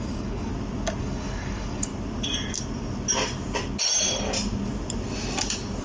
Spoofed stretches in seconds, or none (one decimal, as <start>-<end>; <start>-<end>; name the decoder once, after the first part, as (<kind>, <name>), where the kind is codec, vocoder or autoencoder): 0.0-0.5 (codec, DAC); 1.0-1.9